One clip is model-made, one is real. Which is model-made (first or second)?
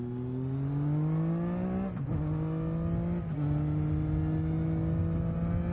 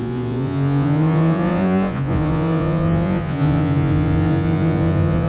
second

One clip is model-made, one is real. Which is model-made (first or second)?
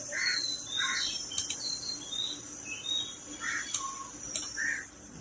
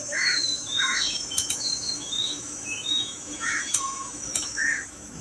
second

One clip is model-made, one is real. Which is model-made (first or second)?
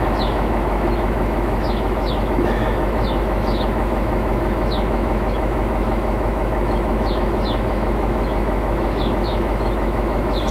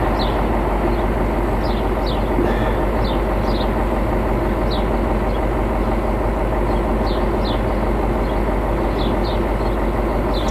first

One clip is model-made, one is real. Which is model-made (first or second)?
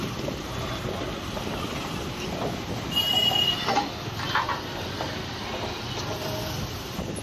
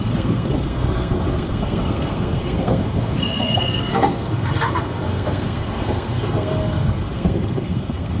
second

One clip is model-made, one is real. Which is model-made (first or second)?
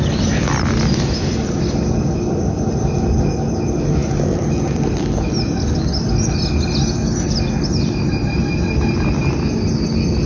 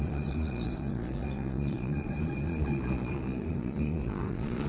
second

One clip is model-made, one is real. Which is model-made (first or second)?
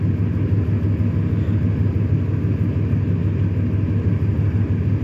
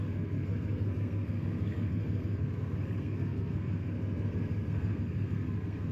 second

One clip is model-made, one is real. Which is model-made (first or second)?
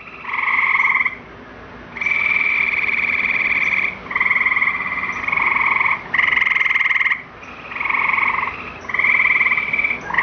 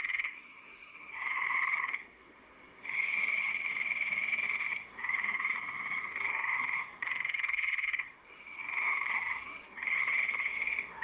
second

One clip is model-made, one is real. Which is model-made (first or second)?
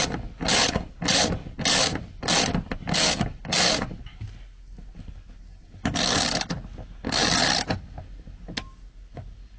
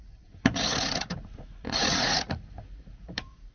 second